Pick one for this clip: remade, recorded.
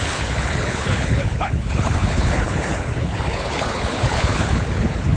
remade